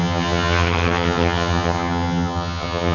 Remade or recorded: remade